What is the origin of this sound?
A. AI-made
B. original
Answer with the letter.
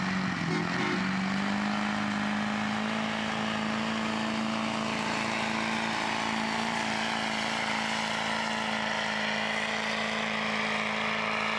B